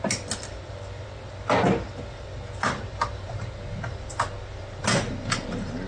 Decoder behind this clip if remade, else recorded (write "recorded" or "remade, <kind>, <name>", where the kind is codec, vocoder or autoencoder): recorded